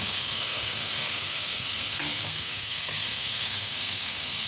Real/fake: fake